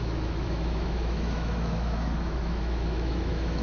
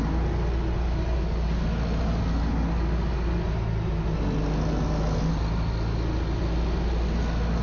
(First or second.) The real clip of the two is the second